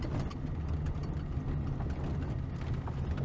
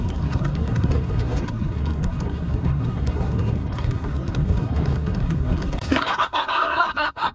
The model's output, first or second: second